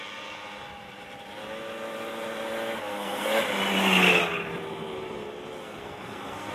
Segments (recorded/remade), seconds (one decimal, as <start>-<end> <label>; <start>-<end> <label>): 0.0-2.8 recorded; 2.8-3.4 remade; 3.4-5.6 recorded; 5.6-6.5 remade